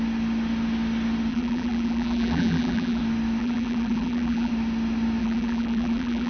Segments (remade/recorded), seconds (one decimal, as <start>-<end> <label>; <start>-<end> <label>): 0.0-1.3 recorded; 1.3-3.0 remade; 3.0-3.4 recorded; 3.4-4.5 remade; 4.5-5.2 recorded; 5.2-6.3 remade